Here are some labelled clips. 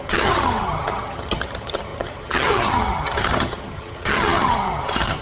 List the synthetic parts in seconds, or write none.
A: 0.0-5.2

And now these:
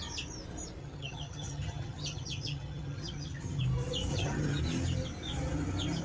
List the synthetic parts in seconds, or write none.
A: 0.8-3.6; 4.1-4.6

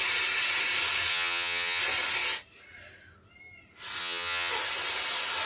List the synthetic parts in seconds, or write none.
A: 1.1-1.8; 4.0-4.5

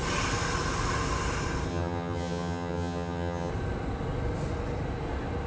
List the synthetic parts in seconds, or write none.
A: 1.7-3.5